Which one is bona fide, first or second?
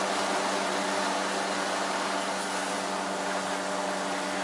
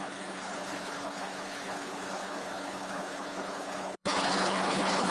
first